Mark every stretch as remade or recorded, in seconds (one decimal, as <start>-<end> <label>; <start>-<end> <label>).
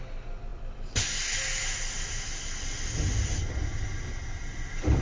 0.0-5.0 recorded